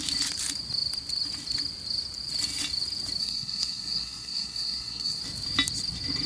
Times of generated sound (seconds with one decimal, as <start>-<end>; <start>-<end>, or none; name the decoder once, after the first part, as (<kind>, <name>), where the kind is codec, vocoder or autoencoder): 3.2-5.2 (codec, SNAC)